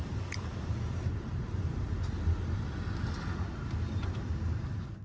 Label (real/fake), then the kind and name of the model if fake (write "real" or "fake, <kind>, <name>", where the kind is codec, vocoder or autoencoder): real